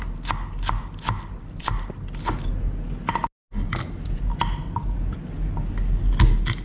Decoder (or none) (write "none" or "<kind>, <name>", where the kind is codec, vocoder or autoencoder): none